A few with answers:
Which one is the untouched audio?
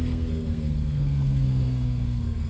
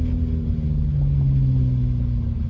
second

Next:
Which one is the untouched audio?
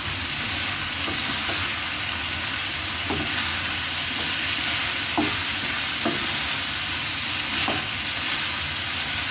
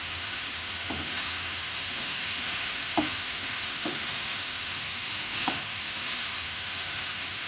first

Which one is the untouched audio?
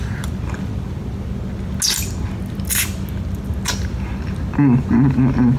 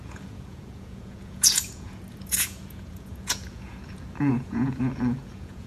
first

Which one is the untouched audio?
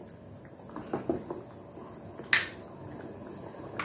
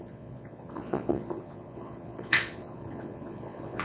first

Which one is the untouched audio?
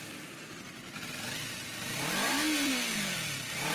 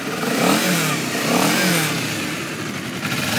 second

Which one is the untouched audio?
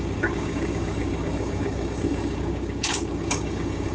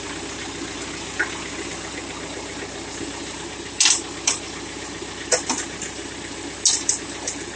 second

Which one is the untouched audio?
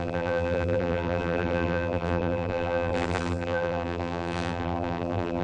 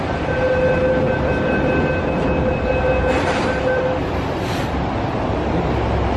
second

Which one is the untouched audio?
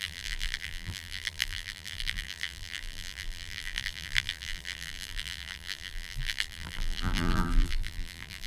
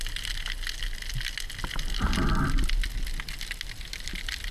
second